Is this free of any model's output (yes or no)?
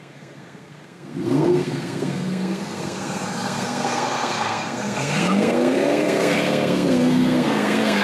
no